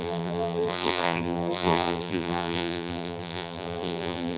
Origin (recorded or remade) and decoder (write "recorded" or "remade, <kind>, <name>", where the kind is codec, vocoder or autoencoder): remade, vocoder, BigVGAN v2